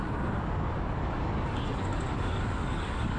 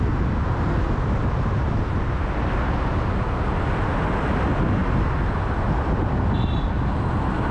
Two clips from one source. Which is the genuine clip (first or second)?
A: second